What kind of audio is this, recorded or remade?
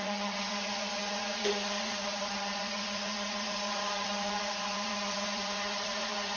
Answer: remade